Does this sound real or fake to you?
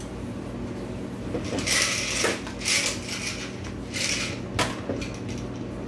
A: real